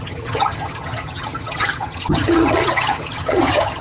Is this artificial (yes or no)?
yes